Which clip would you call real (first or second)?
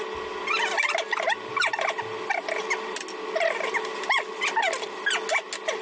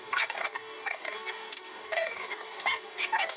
first